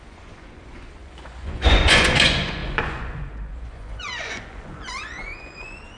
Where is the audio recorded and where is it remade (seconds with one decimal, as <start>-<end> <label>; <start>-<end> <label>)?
0.0-6.0 remade